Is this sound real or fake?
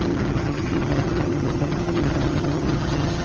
fake